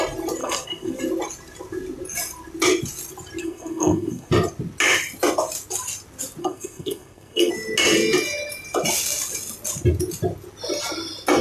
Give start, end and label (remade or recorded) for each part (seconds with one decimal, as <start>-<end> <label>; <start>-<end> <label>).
0.0-0.4 recorded; 0.4-1.0 remade; 1.0-3.4 recorded; 3.4-4.3 remade; 4.3-6.4 recorded; 6.4-7.5 remade; 7.5-11.4 recorded